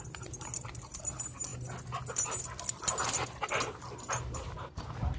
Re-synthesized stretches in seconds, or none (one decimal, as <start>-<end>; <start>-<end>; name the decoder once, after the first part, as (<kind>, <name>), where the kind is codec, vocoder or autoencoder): none